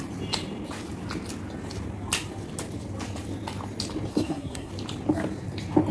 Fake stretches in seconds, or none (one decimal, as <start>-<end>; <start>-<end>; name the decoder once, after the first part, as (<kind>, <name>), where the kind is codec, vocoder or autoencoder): 4.1-4.7 (codec, SNAC)